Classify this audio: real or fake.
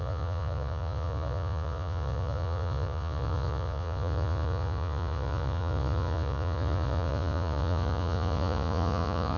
fake